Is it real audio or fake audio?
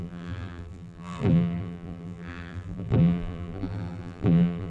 fake